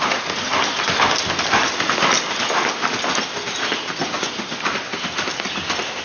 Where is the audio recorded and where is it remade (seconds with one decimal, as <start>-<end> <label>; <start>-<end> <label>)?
0.0-6.0 recorded